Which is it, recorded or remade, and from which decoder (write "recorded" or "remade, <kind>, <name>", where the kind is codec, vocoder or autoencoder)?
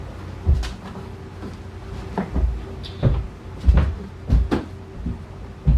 recorded